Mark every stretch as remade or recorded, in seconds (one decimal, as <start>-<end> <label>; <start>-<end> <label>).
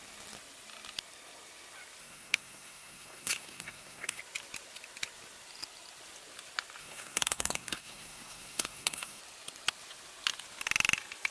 0.0-2.0 recorded; 2.0-4.2 remade; 4.2-6.8 recorded; 6.8-9.2 remade; 9.2-11.3 recorded